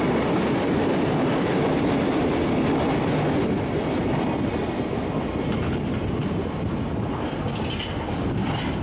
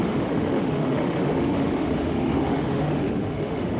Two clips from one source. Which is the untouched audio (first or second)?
first